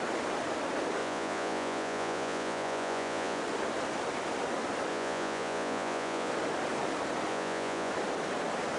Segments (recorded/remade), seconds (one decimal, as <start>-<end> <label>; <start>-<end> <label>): 0.0-1.0 recorded; 1.0-3.4 remade; 3.4-4.9 recorded; 4.9-6.3 remade; 6.3-7.3 recorded; 7.3-7.9 remade; 7.9-8.8 recorded